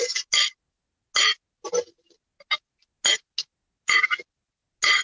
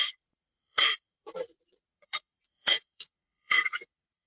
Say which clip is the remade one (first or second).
second